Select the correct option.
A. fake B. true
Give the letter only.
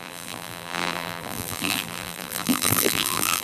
A